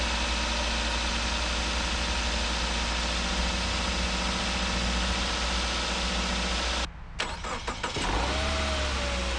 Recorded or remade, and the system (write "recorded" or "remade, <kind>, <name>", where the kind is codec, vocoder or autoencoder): recorded